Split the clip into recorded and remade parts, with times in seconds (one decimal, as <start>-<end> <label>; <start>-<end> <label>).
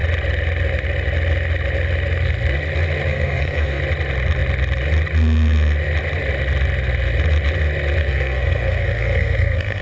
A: 0.0-3.1 recorded; 3.1-3.8 remade; 3.8-8.0 recorded; 8.0-9.8 remade